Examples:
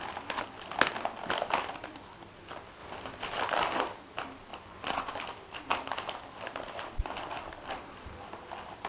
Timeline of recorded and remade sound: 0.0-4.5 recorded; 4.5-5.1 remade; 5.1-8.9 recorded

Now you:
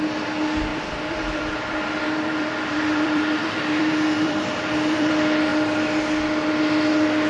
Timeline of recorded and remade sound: 0.0-0.7 recorded; 0.7-5.1 remade; 5.1-7.3 recorded

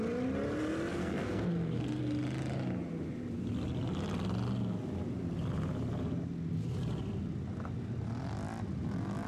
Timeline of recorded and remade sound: 0.0-0.9 recorded; 0.9-2.0 remade; 2.0-9.3 recorded

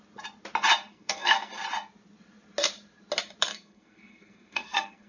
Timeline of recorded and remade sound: 0.0-0.9 recorded; 0.9-1.5 remade; 1.5-3.5 recorded; 3.5-5.1 remade

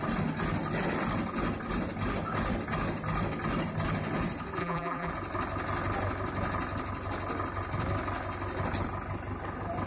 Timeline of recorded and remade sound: 0.0-4.6 recorded; 4.6-5.1 remade; 5.1-9.9 recorded

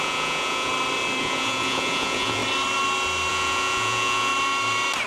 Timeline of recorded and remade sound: 0.0-0.7 remade; 0.7-1.2 recorded; 1.2-2.4 remade; 2.4-3.3 recorded; 3.3-4.3 remade; 4.3-5.1 recorded

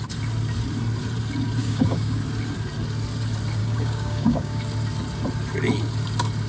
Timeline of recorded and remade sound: 0.0-1.6 recorded; 1.6-2.2 remade; 2.2-3.6 recorded; 3.6-4.6 remade; 4.6-6.5 recorded